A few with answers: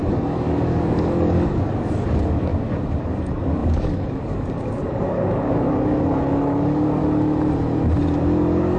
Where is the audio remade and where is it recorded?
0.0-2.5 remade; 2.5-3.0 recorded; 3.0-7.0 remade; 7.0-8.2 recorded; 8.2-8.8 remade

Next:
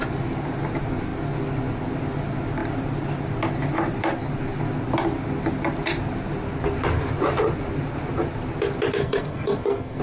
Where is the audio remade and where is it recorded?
0.0-9.0 recorded; 9.0-10.0 remade